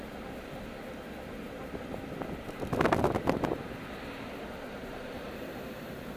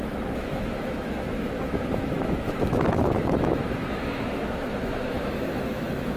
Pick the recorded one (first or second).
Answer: first